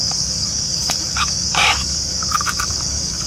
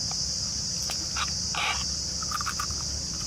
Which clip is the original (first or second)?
second